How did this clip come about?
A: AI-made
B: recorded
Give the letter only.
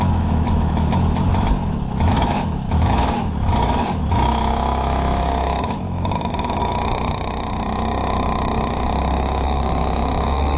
A